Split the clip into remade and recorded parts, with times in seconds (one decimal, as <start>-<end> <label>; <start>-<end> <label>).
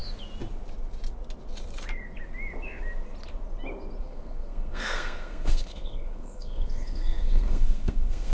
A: 0.0-4.0 recorded; 4.0-8.3 remade